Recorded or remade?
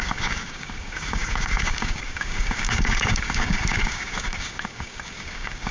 remade